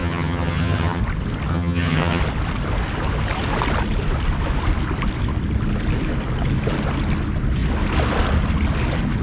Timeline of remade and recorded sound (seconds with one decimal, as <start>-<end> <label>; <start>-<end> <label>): 0.0-1.0 remade; 1.0-1.5 recorded; 1.5-2.2 remade; 2.2-9.2 recorded